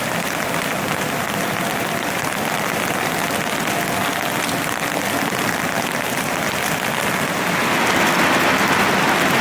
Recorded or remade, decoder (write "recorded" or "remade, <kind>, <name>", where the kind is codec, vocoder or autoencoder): recorded